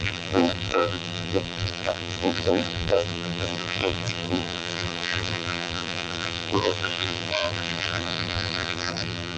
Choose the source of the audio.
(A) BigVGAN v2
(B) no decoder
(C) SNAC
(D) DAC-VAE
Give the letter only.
A